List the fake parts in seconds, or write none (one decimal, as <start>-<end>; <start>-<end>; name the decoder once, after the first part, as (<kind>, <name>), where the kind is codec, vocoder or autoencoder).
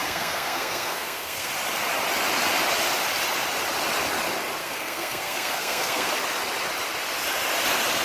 0.0-1.5 (codec, SNAC); 4.6-6.1